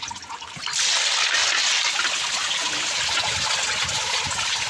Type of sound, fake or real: real